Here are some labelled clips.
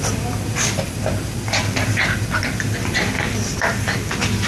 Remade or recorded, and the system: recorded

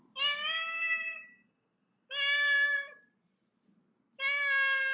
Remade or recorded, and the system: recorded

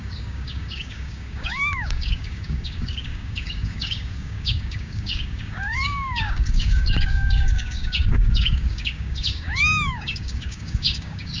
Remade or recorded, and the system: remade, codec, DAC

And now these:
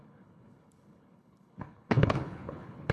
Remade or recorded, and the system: remade, codec, HILCodec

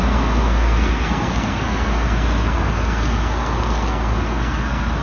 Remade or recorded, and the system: remade, codec, SNAC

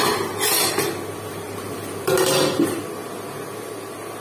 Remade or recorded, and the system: recorded